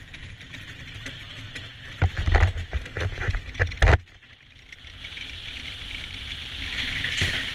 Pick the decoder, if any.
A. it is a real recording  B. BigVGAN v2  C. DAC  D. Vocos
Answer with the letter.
A